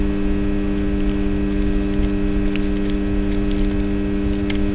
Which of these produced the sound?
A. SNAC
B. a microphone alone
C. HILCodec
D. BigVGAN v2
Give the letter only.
B